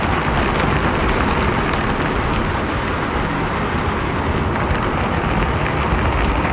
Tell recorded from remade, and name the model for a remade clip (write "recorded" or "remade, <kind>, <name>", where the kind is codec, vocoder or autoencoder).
recorded